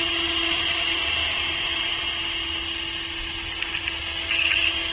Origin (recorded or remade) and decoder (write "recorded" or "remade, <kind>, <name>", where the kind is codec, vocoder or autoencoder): recorded